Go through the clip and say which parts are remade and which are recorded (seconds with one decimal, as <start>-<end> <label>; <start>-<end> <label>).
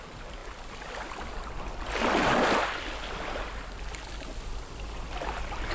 0.0-5.7 recorded